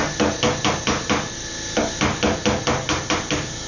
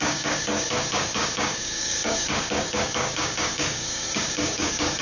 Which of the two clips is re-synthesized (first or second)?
second